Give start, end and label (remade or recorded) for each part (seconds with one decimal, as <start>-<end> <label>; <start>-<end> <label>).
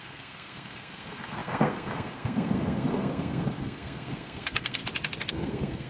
0.0-4.8 remade; 4.8-5.3 recorded; 5.3-5.9 remade